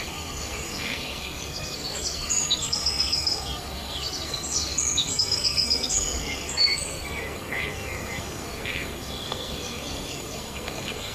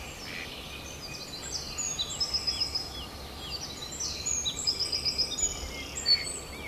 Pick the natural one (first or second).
second